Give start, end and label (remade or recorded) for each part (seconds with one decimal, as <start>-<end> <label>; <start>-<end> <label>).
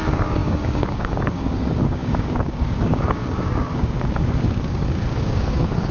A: 0.0-5.9 remade